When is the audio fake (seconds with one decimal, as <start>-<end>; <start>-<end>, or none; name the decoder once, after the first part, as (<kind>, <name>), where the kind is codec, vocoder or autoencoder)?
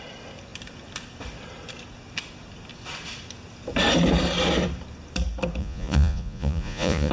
5.6-7.1 (vocoder, Vocos)